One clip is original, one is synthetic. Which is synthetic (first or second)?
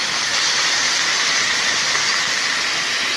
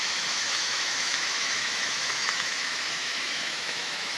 second